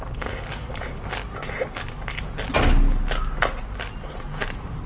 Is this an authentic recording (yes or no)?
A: yes